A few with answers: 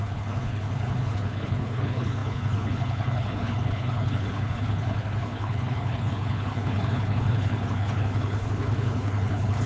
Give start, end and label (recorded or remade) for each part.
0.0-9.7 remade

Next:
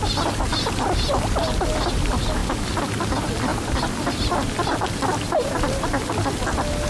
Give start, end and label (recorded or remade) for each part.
0.0-6.9 recorded

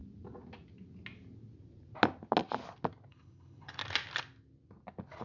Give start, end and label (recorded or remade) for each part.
0.0-3.1 recorded; 3.1-3.8 remade; 3.8-5.2 recorded

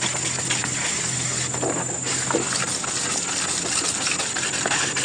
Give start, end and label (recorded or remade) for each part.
0.0-5.0 recorded

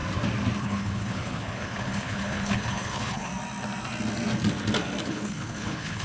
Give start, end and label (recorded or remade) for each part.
0.0-0.6 recorded; 0.6-3.3 remade; 3.3-5.0 recorded; 5.0-6.0 remade